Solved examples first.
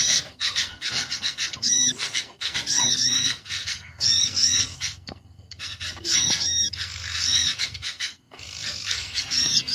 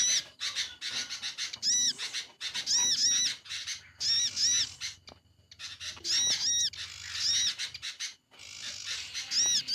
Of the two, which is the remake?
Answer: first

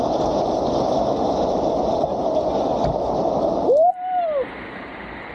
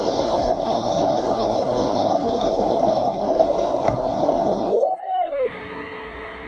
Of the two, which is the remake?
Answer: second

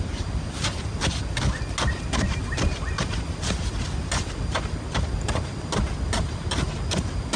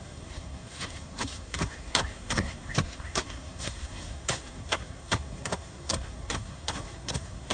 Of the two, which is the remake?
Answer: second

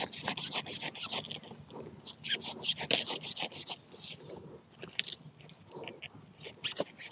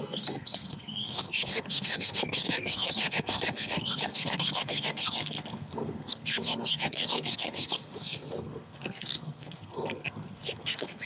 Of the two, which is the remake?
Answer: second